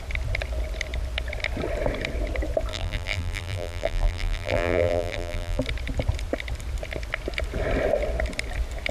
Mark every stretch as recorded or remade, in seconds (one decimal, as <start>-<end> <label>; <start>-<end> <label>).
0.0-2.7 recorded; 2.7-5.6 remade; 5.6-8.9 recorded